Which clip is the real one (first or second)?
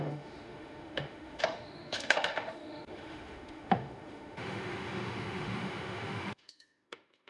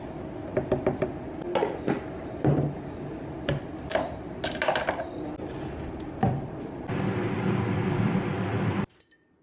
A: second